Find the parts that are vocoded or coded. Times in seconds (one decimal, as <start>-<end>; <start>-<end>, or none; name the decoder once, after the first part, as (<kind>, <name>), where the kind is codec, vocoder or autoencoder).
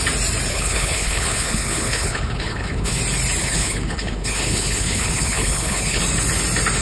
0.5-3.0 (codec, HILCodec); 3.4-6.0